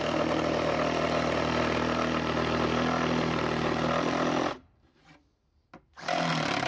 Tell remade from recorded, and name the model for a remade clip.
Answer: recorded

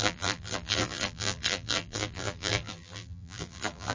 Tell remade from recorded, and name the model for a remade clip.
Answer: remade, vocoder, BigVGAN v2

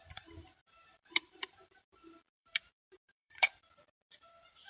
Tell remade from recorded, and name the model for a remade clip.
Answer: remade, vocoder, BigVGAN v2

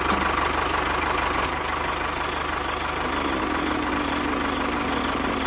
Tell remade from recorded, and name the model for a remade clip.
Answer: recorded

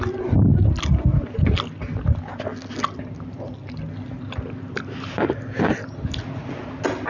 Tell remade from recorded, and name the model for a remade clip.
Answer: recorded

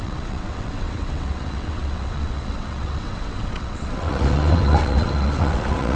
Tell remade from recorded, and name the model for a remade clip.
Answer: remade, vocoder, WaveNeXt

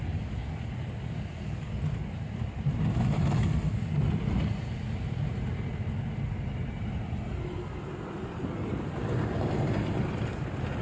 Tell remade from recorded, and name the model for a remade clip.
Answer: recorded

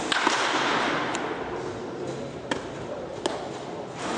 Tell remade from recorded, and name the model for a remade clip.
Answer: recorded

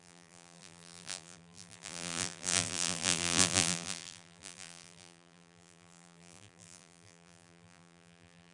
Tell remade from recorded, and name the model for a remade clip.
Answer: remade, vocoder, BigVGAN v2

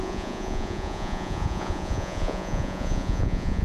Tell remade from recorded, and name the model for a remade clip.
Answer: remade, vocoder, Vocos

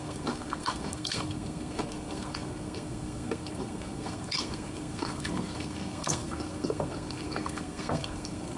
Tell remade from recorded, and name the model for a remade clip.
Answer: remade, codec, SNAC